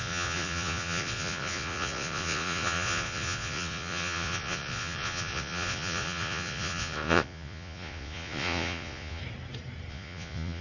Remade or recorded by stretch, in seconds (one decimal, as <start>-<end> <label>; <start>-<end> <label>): 0.0-9.2 remade; 9.2-9.9 recorded; 9.9-10.6 remade